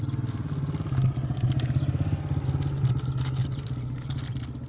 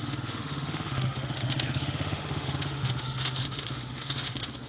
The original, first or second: first